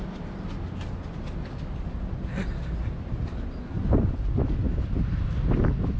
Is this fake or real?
real